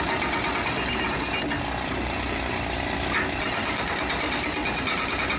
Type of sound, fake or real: real